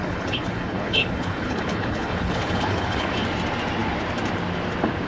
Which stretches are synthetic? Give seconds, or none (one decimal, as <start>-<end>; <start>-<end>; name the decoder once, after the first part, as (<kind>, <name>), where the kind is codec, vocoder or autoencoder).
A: 0.0-3.1 (codec, HILCodec)

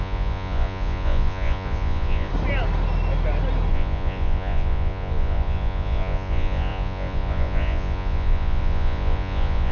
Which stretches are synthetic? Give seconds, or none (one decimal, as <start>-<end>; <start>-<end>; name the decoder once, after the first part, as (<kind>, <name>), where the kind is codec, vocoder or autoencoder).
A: 0.0-2.3 (vocoder, Vocos); 3.7-9.7